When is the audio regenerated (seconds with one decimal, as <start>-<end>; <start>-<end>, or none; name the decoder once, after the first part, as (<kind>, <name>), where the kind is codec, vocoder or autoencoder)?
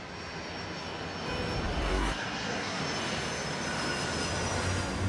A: 1.9-2.8 (codec, SNAC)